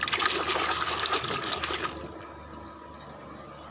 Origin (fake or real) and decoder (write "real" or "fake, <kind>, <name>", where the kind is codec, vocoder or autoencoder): real